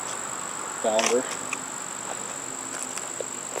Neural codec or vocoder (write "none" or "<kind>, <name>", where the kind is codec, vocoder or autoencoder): none